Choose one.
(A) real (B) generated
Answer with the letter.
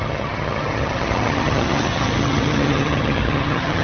B